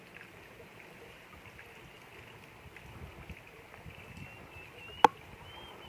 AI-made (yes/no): no